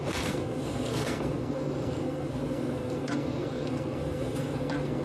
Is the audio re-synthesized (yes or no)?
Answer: yes